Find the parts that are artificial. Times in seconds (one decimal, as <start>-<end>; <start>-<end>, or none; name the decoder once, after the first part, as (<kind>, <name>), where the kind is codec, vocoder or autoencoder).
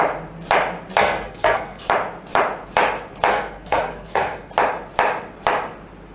1.0-1.8 (codec, SNAC); 3.3-4.5